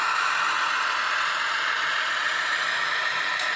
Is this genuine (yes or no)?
yes